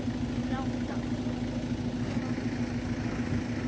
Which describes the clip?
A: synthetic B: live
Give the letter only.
B